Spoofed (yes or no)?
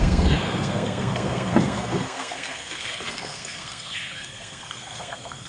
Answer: yes